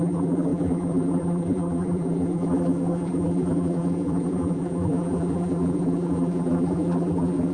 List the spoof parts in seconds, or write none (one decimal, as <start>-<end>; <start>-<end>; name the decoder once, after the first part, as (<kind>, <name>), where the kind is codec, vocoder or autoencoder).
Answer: 0.0-7.5 (vocoder, BigVGAN v2)